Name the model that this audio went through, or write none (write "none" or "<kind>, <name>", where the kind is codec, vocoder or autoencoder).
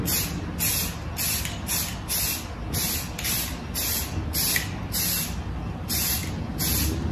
none